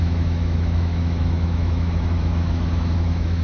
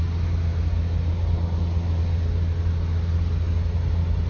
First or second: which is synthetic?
first